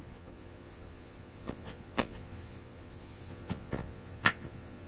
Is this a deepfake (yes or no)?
yes